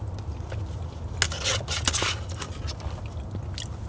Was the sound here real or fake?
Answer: real